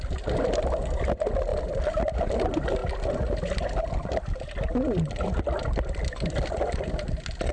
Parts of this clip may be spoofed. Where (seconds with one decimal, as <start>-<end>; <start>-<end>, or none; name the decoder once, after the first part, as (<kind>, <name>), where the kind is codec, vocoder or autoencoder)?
none